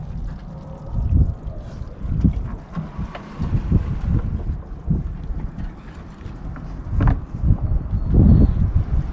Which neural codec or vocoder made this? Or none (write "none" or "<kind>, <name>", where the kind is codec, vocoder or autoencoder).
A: none